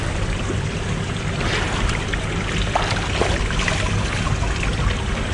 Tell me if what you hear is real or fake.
real